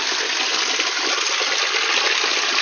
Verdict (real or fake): real